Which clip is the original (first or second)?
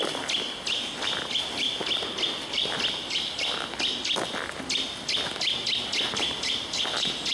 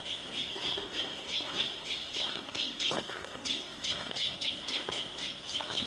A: first